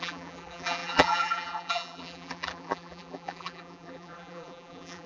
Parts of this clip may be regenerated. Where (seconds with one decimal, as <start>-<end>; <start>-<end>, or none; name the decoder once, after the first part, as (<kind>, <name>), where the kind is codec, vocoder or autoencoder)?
0.0-5.1 (vocoder, BigVGAN v2)

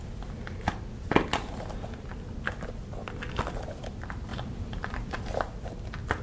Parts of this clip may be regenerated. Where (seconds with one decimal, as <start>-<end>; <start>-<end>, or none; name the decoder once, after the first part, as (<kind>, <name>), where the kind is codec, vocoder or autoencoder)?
4.3-5.4 (vocoder, BigVGAN v2)

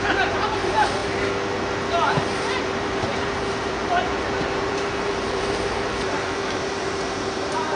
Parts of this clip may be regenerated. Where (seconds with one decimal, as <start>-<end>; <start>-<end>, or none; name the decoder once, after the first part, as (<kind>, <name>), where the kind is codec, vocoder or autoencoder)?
0.0-1.0 (vocoder, BigVGAN v2); 2.6-7.8

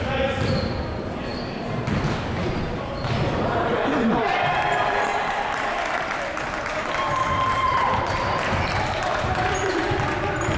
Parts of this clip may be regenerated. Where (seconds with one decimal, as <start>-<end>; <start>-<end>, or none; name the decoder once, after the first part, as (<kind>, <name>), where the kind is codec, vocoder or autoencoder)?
0.0-10.6 (vocoder, BigVGAN v2)

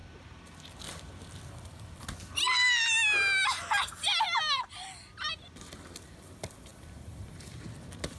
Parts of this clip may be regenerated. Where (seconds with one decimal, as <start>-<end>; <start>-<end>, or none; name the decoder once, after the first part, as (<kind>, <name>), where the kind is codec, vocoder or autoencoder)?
0.0-1.4 (vocoder, BigVGAN v2); 6.7-7.6